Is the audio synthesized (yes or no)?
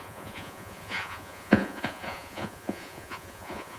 yes